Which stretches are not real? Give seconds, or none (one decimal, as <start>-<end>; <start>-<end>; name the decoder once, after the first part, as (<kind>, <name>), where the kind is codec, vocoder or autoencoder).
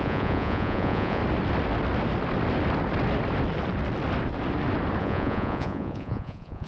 0.0-1.2 (vocoder, Vocos); 5.0-6.7